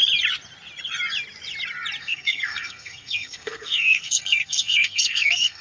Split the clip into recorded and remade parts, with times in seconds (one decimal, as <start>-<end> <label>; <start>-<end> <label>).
0.0-2.0 recorded; 2.0-5.6 remade